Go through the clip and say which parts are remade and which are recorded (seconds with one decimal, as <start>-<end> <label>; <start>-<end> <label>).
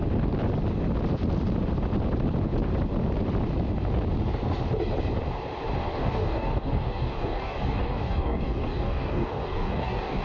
0.0-5.9 recorded; 5.9-10.2 remade